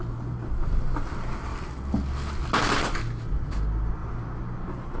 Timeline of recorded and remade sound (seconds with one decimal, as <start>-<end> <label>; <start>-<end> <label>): 0.0-5.0 recorded